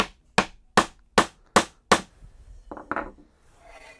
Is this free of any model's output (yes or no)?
yes